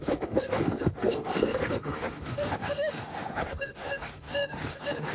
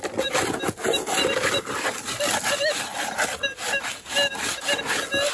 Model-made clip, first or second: first